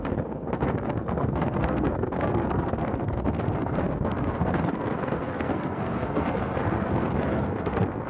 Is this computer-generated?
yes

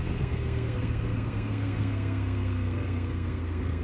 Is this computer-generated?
yes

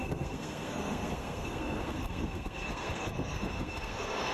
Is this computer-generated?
yes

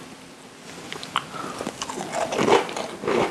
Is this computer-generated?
no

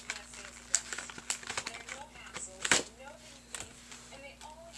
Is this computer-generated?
no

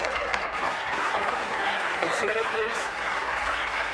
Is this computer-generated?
yes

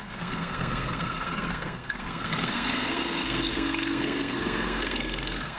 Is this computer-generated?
yes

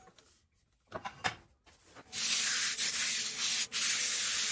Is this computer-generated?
no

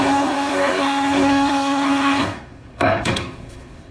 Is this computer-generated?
yes